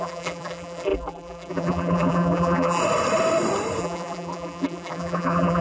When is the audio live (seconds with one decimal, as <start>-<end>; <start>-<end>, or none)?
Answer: 2.8-3.8